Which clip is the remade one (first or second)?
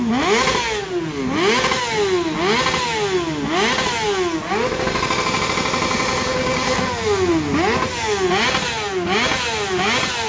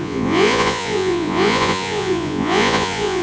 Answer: second